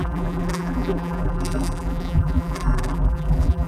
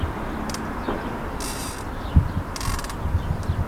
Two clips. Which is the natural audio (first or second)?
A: second